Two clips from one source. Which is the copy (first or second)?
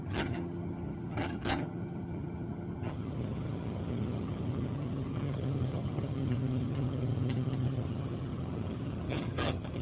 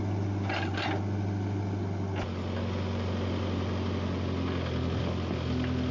first